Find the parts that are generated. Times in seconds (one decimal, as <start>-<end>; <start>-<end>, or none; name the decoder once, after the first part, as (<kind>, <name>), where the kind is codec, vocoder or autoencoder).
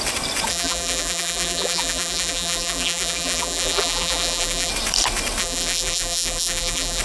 0.5-4.7 (vocoder, BigVGAN v2); 5.4-7.0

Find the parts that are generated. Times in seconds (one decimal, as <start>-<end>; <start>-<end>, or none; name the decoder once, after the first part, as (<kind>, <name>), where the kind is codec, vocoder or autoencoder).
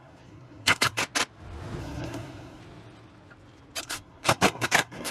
0.0-1.0 (codec, SNAC); 1.8-2.6; 3.8-5.1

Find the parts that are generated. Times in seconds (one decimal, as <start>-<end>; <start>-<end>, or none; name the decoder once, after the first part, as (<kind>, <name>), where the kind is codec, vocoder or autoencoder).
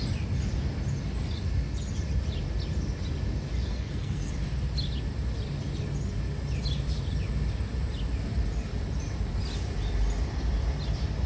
3.6-4.3 (codec, SNAC)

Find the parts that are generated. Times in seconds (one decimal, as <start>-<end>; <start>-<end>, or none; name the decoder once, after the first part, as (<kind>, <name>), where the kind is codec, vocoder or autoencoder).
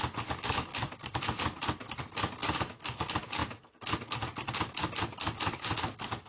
0.7-2.0 (vocoder, BigVGAN v2)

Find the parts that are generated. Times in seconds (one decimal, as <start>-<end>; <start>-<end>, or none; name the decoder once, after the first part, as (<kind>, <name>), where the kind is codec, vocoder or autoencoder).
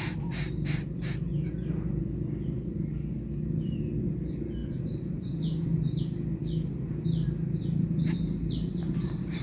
none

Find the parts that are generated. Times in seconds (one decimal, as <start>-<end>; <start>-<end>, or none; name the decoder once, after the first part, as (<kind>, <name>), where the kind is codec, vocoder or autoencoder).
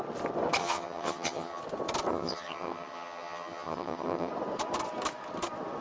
0.6-1.6 (vocoder, HiFi-GAN); 2.1-4.3